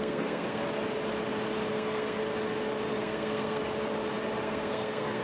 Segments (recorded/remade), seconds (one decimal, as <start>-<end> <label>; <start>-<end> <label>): 0.0-0.6 remade; 0.6-1.7 recorded; 1.7-2.2 remade; 2.2-3.0 recorded; 3.0-3.6 remade; 3.6-4.4 recorded; 4.4-5.2 remade